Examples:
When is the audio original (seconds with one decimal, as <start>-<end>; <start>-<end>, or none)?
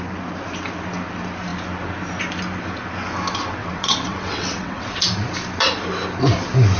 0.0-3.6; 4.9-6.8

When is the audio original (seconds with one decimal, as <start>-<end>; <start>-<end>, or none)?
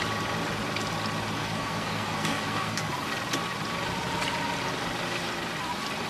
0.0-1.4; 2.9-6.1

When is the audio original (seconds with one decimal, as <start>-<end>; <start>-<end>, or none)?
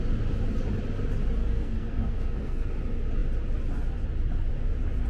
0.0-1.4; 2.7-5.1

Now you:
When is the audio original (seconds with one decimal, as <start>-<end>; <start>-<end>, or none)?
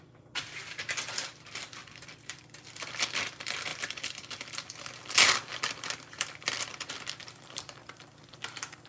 0.0-1.8; 2.4-3.7; 4.8-5.5; 8.3-8.9